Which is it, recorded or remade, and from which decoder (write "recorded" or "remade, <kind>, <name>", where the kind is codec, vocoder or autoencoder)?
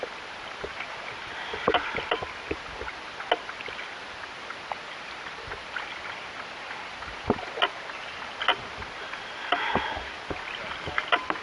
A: recorded